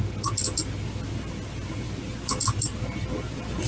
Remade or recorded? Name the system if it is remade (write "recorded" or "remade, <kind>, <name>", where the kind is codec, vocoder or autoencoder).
recorded